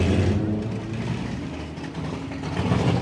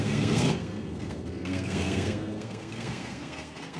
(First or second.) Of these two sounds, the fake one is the second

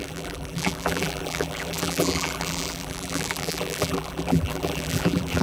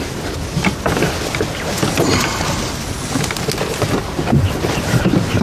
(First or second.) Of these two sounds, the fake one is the first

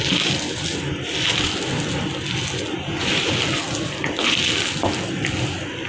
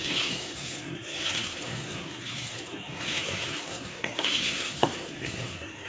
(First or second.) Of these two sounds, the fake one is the second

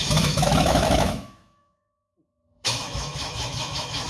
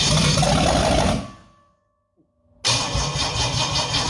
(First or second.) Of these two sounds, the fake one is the first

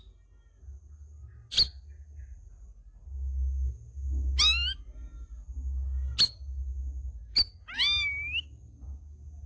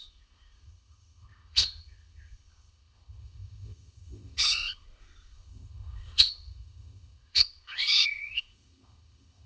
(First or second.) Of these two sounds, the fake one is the second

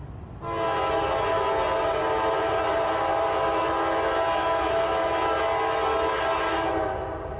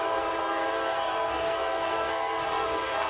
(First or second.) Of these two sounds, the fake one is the second